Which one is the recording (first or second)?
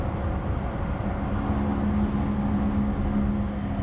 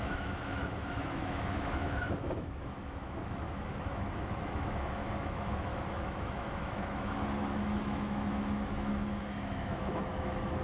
first